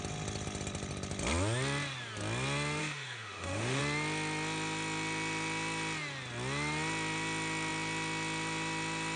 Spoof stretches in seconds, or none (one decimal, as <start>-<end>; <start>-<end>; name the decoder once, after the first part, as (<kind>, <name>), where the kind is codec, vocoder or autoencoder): 2.8-3.8 (autoencoder, DAC-VAE)